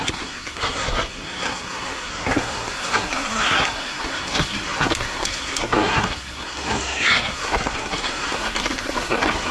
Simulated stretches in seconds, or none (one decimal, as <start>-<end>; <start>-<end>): 0.0-9.5